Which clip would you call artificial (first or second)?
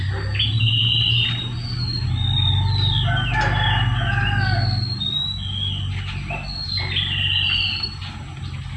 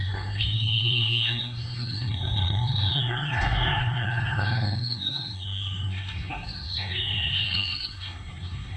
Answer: second